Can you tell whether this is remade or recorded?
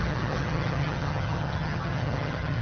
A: remade